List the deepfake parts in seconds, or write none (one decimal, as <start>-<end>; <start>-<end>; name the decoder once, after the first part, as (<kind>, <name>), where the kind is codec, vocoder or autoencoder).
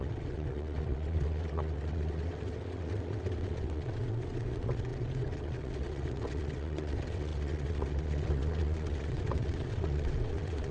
0.0-10.7 (vocoder, WaveNeXt)